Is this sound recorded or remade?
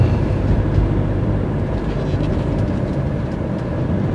remade